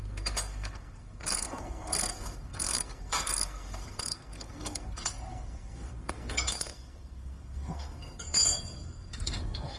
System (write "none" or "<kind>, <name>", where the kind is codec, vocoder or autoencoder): codec, SNAC